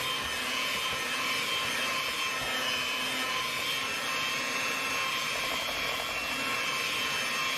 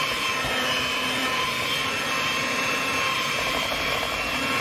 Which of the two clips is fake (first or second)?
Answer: second